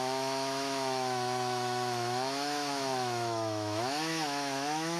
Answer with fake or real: fake